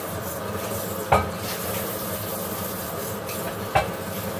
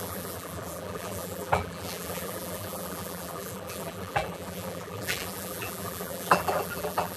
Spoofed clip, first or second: second